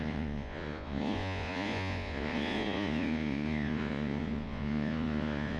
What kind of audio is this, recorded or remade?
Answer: remade